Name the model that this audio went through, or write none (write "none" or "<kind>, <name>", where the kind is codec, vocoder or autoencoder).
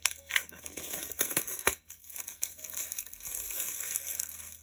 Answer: codec, SNAC